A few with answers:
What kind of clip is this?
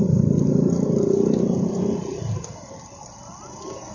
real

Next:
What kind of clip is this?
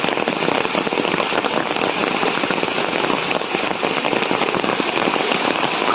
real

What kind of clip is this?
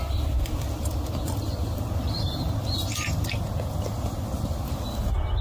real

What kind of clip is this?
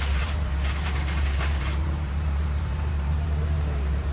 fake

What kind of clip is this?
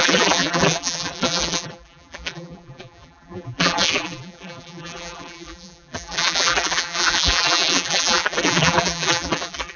fake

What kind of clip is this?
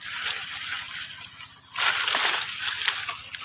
real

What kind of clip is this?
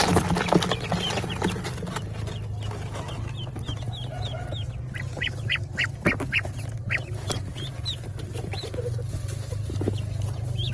real